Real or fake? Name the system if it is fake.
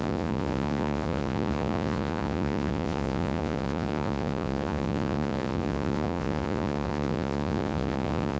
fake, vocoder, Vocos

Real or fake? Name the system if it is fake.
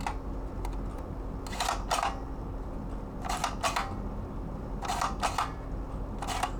real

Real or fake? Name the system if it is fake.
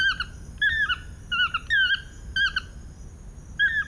real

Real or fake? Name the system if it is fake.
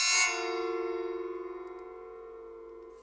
real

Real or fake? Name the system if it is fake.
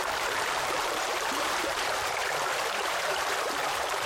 fake, vocoder, BigVGAN v2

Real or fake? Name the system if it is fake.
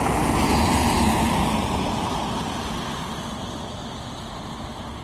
real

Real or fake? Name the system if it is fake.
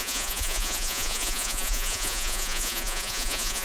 fake, vocoder, Vocos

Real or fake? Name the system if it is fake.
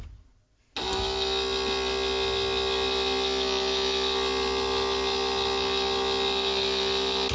real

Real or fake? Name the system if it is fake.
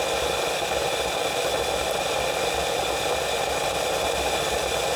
real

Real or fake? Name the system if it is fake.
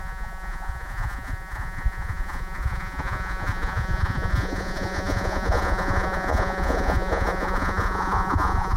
fake, vocoder, Vocos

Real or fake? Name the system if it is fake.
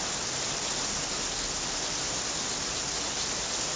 real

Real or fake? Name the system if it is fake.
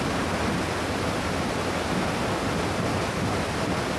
real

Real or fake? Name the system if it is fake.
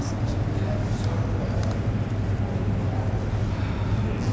real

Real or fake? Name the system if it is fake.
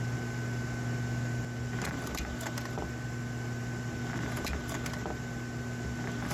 real